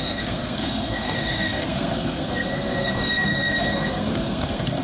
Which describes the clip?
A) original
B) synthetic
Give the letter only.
B